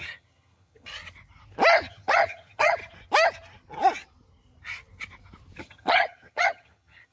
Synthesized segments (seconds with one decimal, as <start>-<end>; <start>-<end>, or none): 0.0-0.9; 1.9-2.8; 5.6-7.1